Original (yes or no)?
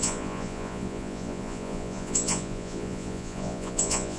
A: no